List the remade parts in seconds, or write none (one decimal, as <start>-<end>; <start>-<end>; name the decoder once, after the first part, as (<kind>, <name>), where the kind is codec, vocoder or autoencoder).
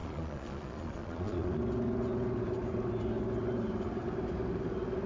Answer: 0.0-1.6 (vocoder, Vocos)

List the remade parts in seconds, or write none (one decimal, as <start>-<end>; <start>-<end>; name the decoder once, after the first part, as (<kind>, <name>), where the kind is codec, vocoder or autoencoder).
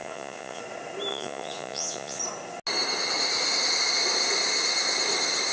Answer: 0.0-0.6 (vocoder, Vocos); 1.1-2.2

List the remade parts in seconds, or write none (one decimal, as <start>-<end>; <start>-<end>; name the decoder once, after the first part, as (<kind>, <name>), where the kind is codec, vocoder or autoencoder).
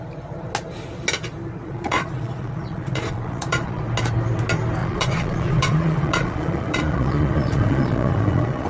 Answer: 1.6-3.8 (vocoder, Vocos); 4.8-8.7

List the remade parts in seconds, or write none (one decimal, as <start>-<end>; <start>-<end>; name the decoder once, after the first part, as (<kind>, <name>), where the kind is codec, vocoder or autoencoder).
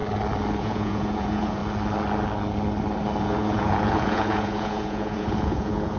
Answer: 0.6-1.6 (vocoder, Vocos); 3.2-6.0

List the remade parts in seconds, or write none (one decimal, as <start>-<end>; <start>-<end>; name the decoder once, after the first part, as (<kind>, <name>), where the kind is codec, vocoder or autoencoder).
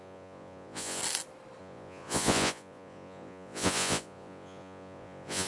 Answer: 0.0-1.0 (vocoder, Vocos); 1.6-5.5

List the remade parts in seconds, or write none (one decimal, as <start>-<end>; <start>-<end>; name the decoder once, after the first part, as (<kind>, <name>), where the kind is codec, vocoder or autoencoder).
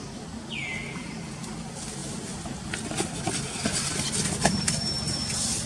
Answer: none